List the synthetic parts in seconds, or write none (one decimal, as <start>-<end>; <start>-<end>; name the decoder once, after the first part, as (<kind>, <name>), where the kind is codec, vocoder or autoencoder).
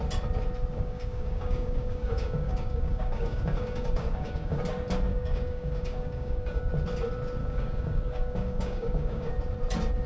0.7-4.6 (codec, DAC); 5.1-6.7; 7.4-9.3